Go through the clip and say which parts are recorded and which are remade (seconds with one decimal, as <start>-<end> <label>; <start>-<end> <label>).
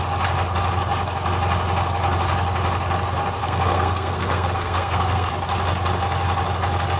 0.0-3.4 recorded; 3.4-5.3 remade; 5.3-7.0 recorded